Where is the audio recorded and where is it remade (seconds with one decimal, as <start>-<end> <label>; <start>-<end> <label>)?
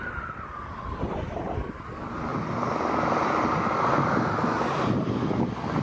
0.0-5.8 recorded